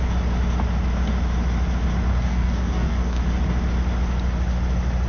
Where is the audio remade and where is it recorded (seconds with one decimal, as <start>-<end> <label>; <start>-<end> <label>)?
0.0-2.1 recorded; 2.1-3.2 remade; 3.2-5.1 recorded

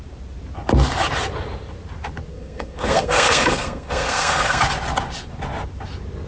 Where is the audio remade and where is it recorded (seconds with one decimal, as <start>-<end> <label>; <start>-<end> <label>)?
0.0-2.3 recorded; 2.3-4.6 remade; 4.6-6.3 recorded

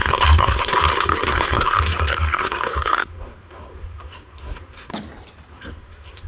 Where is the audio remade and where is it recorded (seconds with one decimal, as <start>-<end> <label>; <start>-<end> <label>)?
0.0-4.9 remade; 4.9-5.5 recorded; 5.5-6.3 remade

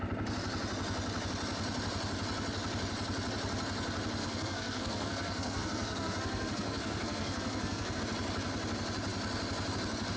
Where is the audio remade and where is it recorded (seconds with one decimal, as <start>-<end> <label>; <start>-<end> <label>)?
0.0-4.2 recorded; 4.2-8.0 remade; 8.0-10.2 recorded

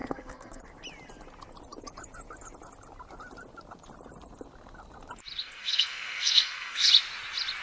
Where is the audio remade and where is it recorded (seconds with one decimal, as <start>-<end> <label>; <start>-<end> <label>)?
0.0-0.6 remade; 0.6-5.4 recorded; 5.4-6.9 remade; 6.9-7.6 recorded

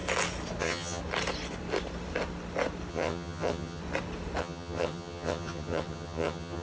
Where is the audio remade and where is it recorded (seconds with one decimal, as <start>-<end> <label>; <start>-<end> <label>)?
0.0-0.6 recorded; 0.6-1.0 remade; 1.0-2.9 recorded; 2.9-3.8 remade; 3.8-4.4 recorded; 4.4-6.6 remade